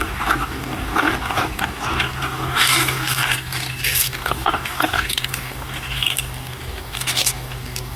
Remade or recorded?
remade